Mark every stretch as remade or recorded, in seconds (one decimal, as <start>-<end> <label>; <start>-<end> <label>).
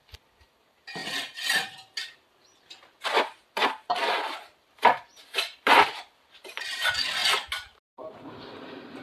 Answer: 0.0-5.1 recorded; 5.1-5.8 remade; 5.8-9.0 recorded